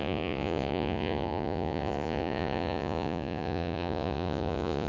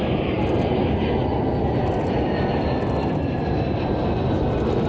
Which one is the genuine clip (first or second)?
second